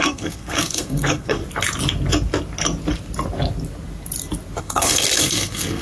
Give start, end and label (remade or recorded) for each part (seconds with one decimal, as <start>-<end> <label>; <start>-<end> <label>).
0.0-1.4 remade; 1.4-4.6 recorded; 4.6-5.8 remade